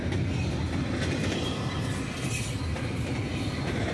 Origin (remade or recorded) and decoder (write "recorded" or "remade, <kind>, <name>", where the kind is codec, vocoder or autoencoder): recorded